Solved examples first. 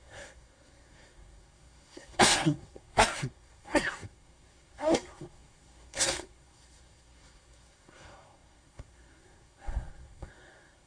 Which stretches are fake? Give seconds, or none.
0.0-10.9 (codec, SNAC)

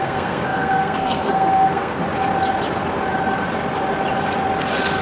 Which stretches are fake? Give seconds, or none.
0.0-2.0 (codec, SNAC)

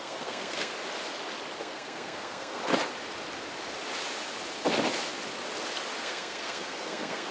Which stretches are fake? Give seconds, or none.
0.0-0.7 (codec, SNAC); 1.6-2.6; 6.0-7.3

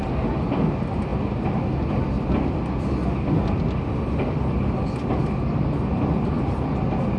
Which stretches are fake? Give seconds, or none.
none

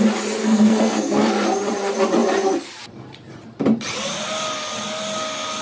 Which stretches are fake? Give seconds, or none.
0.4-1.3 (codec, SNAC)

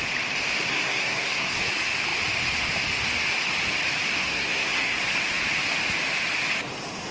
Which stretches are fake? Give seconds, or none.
0.7-1.7 (codec, SNAC); 4.2-5.0

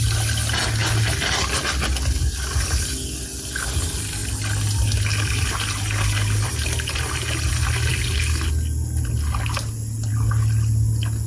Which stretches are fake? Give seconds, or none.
none